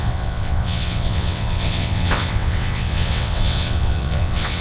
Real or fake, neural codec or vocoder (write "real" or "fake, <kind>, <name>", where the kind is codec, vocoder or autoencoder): fake, vocoder, WaveNeXt